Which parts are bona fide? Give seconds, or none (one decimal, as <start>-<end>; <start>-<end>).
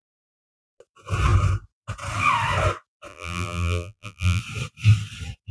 0.0-3.1; 4.4-5.5